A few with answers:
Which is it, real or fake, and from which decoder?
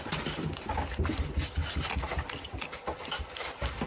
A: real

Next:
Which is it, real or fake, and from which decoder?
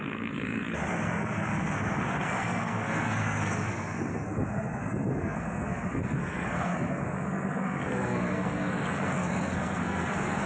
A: fake, codec, SNAC